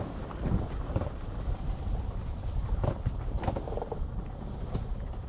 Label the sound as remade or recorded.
remade